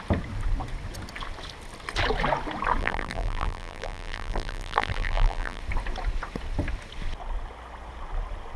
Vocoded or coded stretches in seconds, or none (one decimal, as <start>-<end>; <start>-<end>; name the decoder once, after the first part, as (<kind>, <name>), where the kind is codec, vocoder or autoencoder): 2.8-5.6 (vocoder, BigVGAN v2)